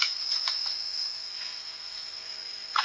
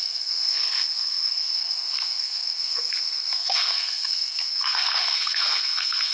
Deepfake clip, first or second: second